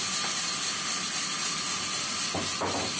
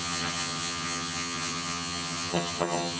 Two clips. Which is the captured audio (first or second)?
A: first